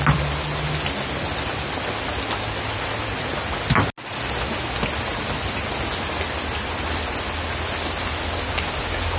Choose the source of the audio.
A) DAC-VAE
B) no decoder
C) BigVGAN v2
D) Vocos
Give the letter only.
B